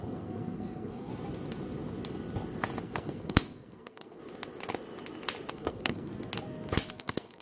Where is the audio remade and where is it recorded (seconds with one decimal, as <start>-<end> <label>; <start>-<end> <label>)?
0.0-1.1 remade; 1.1-2.8 recorded; 2.8-4.2 remade; 4.2-5.5 recorded; 5.5-6.1 remade; 6.1-6.9 recorded; 6.9-7.4 remade